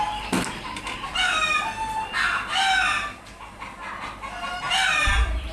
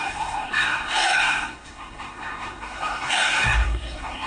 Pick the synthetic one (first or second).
second